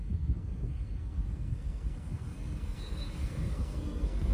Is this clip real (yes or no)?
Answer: no